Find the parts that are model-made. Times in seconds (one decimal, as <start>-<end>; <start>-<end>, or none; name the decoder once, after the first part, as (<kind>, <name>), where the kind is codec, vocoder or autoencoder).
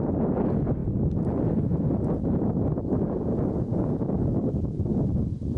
0.8-3.5 (vocoder, BigVGAN v2)